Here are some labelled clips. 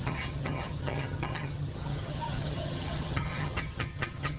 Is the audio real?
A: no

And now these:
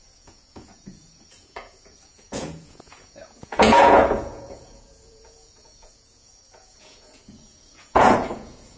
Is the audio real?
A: no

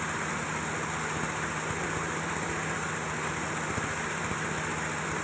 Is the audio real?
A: yes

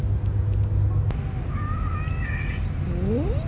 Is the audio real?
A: yes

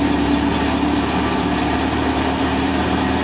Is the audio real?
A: no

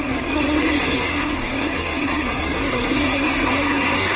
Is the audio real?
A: no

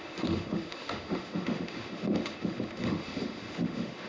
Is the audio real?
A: no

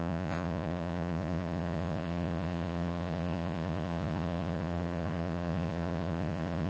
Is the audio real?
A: no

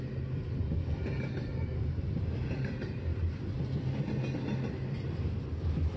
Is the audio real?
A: yes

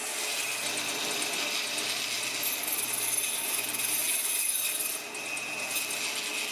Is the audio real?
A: yes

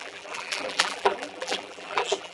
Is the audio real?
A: no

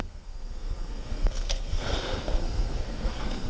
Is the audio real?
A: no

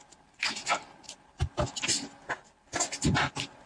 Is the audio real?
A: yes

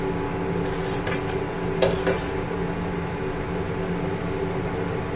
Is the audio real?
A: yes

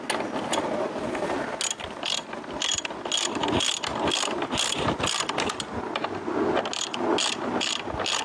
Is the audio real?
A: yes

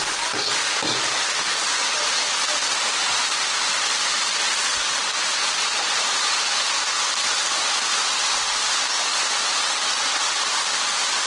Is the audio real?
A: yes